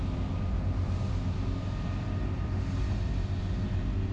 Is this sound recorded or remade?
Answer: recorded